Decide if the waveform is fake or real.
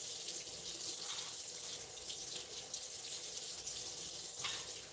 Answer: real